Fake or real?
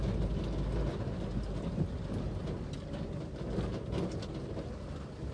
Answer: real